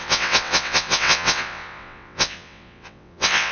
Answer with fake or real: fake